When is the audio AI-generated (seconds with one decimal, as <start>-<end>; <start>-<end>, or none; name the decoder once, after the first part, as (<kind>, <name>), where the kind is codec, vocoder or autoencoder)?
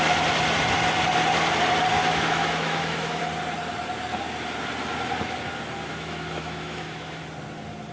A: 2.0-3.2 (autoencoder, DAC-VAE); 5.9-7.2